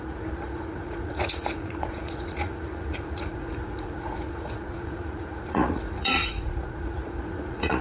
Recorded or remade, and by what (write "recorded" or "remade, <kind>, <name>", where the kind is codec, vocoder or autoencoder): remade, vocoder, Vocos